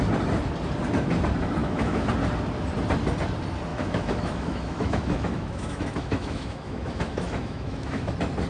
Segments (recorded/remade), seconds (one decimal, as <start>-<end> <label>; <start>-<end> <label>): 0.0-1.6 recorded; 1.6-2.1 remade; 2.1-3.7 recorded; 3.7-8.1 remade; 8.1-8.5 recorded